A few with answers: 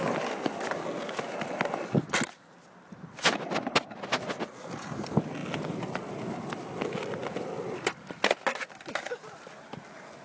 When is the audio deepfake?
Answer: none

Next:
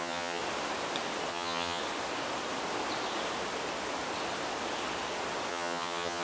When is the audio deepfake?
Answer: 0.0-0.4 (vocoder, HiFi-GAN); 1.3-1.8; 5.5-6.2

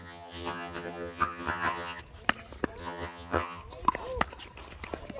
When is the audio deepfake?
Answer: 0.0-2.0 (vocoder, HiFi-GAN); 2.8-3.6

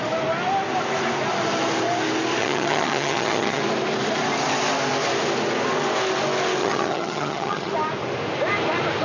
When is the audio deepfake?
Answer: 2.4-3.6 (vocoder, HiFi-GAN); 6.6-7.7

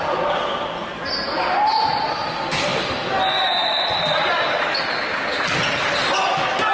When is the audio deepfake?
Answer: none

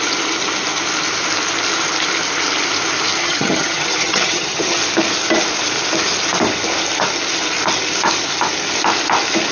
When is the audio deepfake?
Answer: 3.2-4.8 (vocoder, HiFi-GAN)

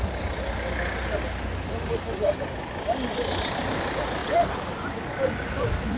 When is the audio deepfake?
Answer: none